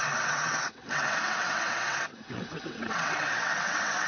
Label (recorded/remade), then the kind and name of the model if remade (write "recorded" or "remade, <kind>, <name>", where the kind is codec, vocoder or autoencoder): remade, vocoder, WaveNeXt